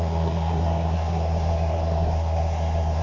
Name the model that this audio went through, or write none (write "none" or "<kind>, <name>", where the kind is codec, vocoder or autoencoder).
codec, SNAC